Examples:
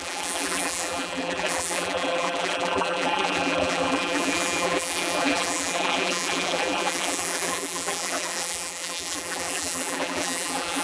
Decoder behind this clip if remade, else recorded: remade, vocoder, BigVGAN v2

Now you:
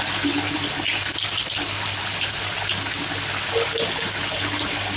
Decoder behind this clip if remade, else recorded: recorded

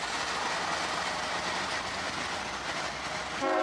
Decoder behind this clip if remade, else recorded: recorded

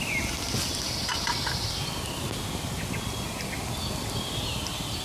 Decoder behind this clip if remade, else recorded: recorded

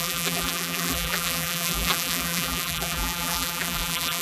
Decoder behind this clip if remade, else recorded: remade, vocoder, BigVGAN v2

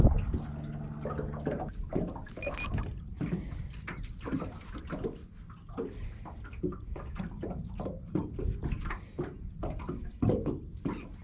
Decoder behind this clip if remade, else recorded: recorded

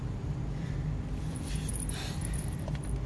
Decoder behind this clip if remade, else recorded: remade, vocoder, BigVGAN v2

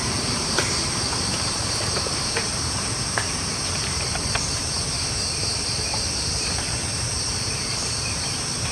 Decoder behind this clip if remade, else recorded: remade, vocoder, BigVGAN v2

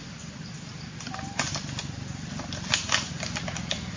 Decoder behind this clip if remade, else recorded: recorded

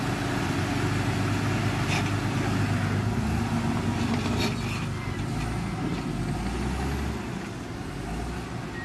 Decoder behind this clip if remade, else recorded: recorded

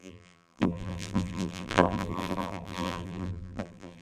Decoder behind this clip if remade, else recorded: remade, vocoder, BigVGAN v2